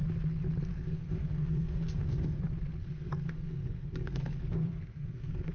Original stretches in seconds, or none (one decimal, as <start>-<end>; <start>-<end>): 0.0-0.7; 2.4-2.8